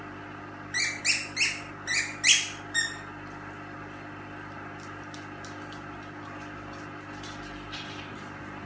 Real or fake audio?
real